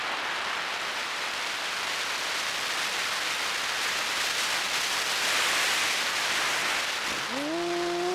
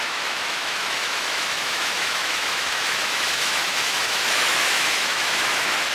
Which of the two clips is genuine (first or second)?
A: first